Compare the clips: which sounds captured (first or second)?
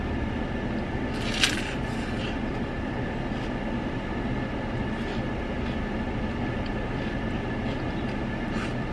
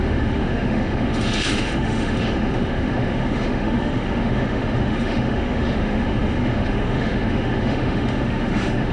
first